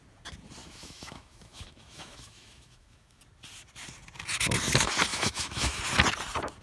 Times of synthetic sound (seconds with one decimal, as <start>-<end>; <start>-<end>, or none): 0.6-3.2; 5.1-5.8